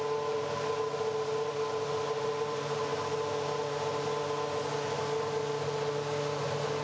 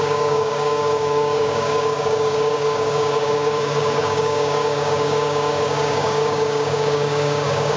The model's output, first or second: second